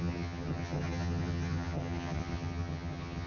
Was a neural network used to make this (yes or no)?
yes